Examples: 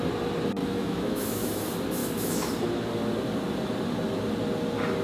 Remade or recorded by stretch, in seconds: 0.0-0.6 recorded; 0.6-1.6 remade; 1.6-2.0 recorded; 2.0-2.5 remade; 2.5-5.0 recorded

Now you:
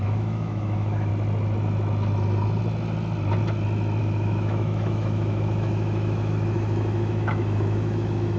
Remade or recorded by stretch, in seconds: 0.0-1.1 remade; 1.1-4.0 recorded; 4.0-8.4 remade

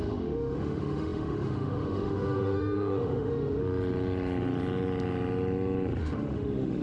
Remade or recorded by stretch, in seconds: 0.0-3.6 remade; 3.6-6.0 recorded; 6.0-6.8 remade

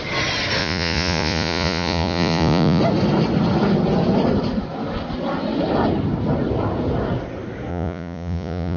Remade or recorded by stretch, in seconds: 0.0-0.6 recorded; 0.6-2.8 remade; 2.8-7.7 recorded; 7.7-8.8 remade

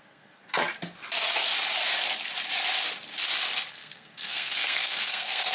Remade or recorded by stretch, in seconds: 0.0-0.4 remade; 0.4-3.7 recorded; 3.7-5.5 remade